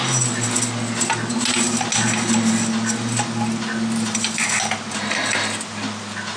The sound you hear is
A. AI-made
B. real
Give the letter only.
B